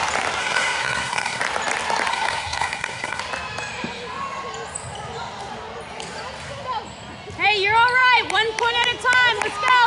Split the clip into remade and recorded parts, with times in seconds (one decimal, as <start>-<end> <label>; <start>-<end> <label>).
0.0-0.4 recorded; 0.4-1.4 remade; 1.4-2.1 recorded; 2.1-3.2 remade; 3.2-9.9 recorded